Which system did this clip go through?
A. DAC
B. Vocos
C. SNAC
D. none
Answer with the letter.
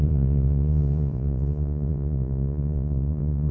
B